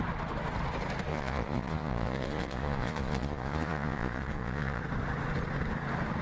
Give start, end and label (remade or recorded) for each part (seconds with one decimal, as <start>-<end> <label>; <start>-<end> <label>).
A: 0.0-1.1 recorded; 1.1-4.8 remade; 4.8-6.2 recorded